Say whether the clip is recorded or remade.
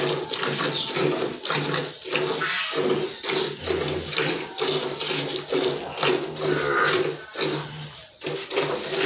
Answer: recorded